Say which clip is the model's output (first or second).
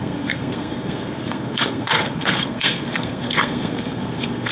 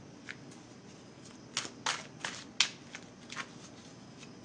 first